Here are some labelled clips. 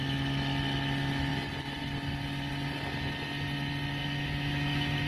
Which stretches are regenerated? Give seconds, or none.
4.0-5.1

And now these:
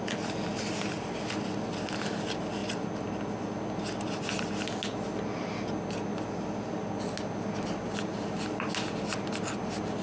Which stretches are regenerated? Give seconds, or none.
none

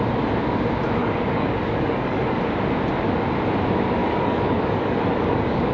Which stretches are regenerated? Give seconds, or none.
1.0-2.4; 4.0-5.7